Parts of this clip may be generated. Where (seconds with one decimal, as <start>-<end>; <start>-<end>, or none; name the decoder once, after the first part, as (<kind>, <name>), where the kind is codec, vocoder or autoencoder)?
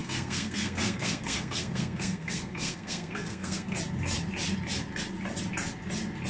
0.0-3.8 (codec, SNAC)